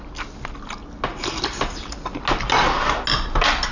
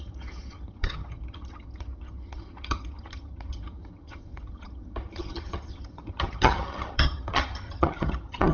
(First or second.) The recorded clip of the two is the first